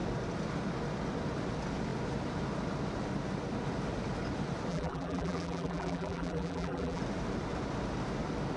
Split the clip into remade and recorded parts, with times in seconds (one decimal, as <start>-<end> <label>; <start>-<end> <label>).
0.0-4.7 recorded; 4.7-7.0 remade; 7.0-8.6 recorded